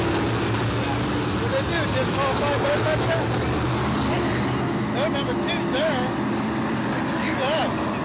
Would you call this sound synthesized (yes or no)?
no